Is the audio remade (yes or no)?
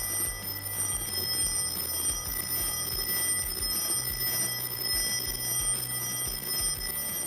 no